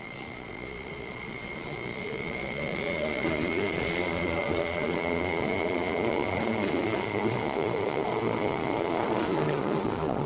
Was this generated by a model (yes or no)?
yes